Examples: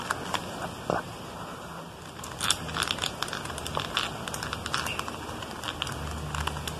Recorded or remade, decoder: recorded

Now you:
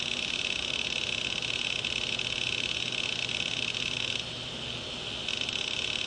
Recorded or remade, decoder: remade, vocoder, BigVGAN v2